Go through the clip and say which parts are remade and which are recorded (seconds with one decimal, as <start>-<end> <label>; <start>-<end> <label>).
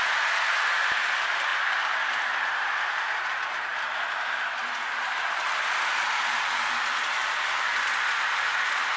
0.0-9.0 recorded